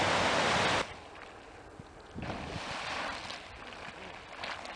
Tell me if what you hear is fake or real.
real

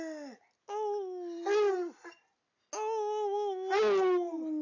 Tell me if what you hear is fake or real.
real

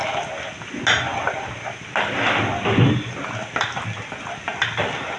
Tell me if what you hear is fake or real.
real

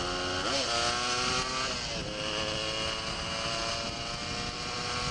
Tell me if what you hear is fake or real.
real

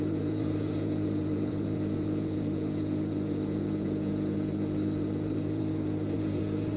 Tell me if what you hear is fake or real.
fake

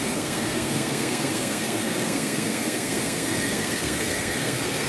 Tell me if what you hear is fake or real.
fake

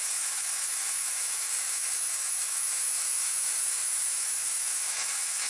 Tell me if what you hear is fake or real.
fake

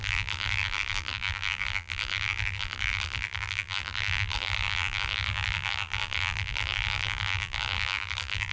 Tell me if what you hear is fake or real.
fake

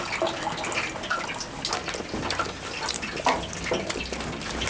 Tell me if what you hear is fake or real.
real